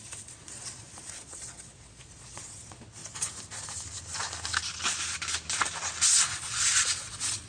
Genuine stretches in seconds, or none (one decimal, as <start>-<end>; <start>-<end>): 3.0-6.2